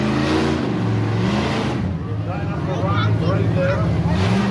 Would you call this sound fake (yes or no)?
no